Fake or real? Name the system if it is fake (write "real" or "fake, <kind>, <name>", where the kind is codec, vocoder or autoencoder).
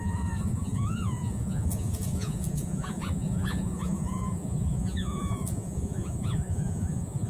fake, vocoder, Vocos